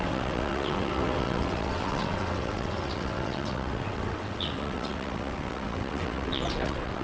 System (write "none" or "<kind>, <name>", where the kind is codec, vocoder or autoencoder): vocoder, WaveNeXt